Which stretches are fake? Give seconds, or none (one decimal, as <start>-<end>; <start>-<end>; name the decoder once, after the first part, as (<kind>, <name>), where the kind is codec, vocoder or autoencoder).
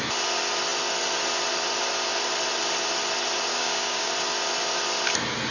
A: 3.5-4.1 (codec, DAC)